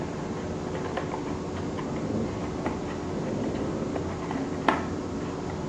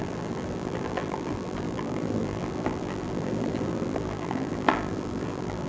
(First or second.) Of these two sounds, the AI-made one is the second